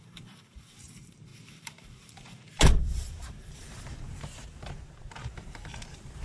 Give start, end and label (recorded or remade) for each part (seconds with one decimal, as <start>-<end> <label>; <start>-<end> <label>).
0.0-6.2 remade